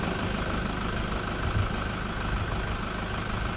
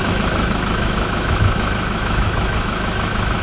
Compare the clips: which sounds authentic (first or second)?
first